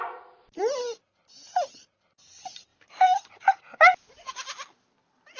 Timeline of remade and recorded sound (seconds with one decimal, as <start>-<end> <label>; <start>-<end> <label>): 0.0-5.4 recorded